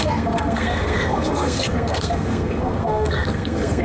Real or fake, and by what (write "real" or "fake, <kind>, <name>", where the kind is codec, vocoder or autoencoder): fake, codec, SNAC